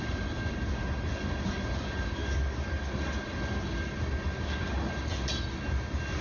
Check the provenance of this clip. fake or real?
real